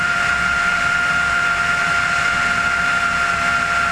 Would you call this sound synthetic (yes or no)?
no